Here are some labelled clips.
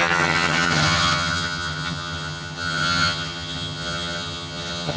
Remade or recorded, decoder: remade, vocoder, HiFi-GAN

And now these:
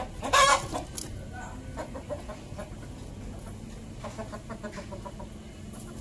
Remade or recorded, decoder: recorded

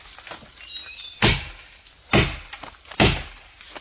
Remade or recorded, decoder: recorded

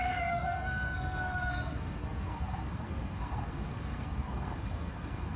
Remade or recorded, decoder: remade, codec, SNAC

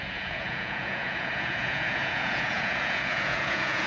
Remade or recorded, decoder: remade, vocoder, Vocos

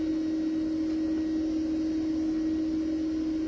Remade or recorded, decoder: recorded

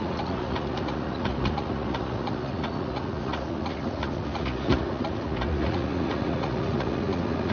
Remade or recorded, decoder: remade, vocoder, Vocos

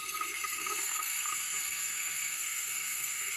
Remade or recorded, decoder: remade, codec, SNAC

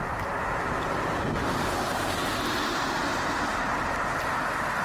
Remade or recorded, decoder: recorded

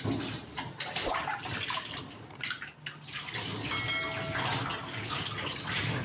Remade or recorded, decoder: recorded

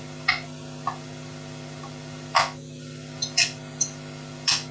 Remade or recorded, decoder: recorded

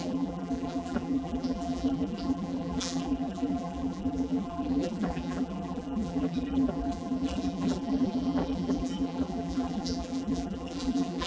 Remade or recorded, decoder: remade, vocoder, BigVGAN v2